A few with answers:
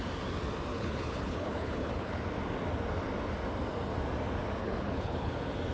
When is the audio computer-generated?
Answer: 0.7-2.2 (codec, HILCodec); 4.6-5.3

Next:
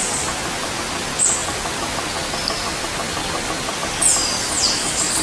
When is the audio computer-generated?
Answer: none

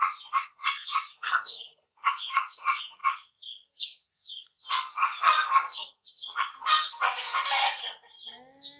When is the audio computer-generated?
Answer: 0.0-7.8 (codec, SNAC)

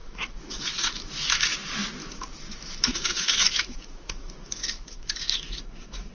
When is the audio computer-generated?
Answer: 0.0-1.5 (autoencoder, DAC-VAE); 2.0-6.1